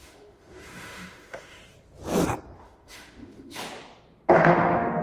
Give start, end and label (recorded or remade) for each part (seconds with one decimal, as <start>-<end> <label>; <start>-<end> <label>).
0.0-1.6 remade; 1.6-2.6 recorded; 2.6-3.6 remade; 3.6-4.3 recorded; 4.3-5.0 remade